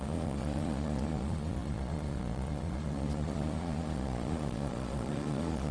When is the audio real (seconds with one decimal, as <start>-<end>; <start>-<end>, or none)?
none